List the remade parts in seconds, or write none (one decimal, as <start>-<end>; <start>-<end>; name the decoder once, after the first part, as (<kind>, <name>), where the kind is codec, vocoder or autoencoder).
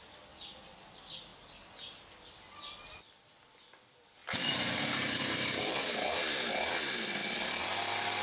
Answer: none